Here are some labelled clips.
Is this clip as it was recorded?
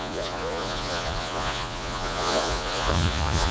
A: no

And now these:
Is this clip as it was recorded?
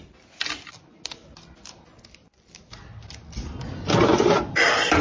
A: yes